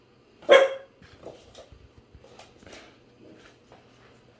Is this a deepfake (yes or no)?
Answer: no